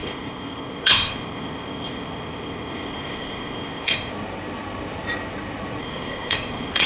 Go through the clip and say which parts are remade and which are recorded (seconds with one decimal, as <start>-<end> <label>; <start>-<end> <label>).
0.0-4.1 remade; 4.1-5.8 recorded; 5.8-6.9 remade